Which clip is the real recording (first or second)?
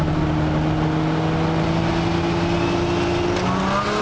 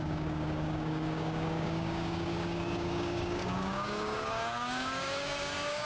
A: first